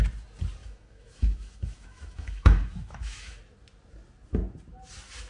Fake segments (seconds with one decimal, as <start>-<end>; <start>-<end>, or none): 0.6-3.4